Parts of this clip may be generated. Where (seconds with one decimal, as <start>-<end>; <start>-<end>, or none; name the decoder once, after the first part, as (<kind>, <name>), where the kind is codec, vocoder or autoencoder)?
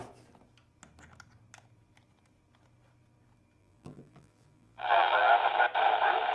3.6-5.3 (vocoder, BigVGAN v2)